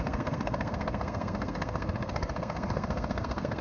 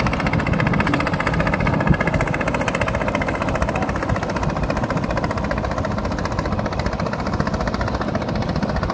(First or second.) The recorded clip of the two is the second